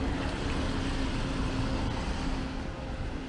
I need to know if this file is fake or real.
real